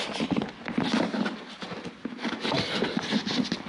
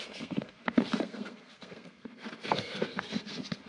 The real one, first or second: first